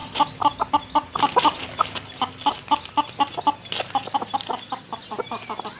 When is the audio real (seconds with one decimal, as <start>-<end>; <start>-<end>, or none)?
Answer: 0.0-5.8